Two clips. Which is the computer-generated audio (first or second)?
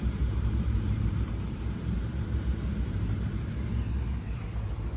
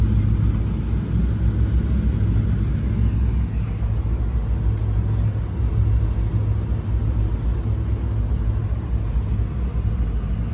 first